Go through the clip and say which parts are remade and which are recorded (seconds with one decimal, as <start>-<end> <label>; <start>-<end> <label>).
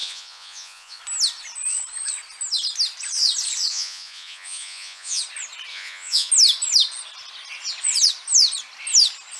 0.0-1.0 remade; 1.0-3.7 recorded; 3.7-5.2 remade; 5.2-5.7 recorded; 5.7-6.3 remade; 6.3-9.4 recorded